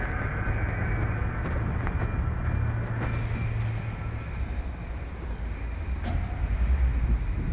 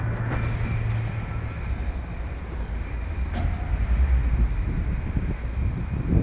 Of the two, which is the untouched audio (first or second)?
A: first